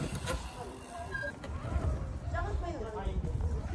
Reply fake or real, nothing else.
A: real